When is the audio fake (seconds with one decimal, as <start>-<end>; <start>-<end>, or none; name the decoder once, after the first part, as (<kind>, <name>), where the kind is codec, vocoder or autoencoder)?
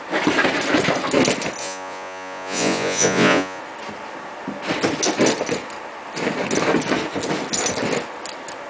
1.6-3.6 (vocoder, Vocos)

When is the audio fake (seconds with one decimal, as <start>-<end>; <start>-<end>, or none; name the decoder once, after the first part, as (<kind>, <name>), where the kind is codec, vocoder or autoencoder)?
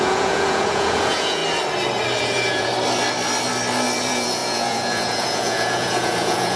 0.0-1.4 (vocoder, Vocos); 2.2-2.7; 4.0-6.6